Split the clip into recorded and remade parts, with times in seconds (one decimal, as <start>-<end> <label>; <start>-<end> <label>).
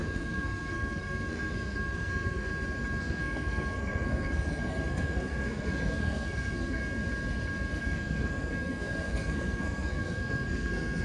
0.0-2.5 remade; 2.5-3.0 recorded; 3.0-6.8 remade; 6.8-7.8 recorded; 7.8-11.0 remade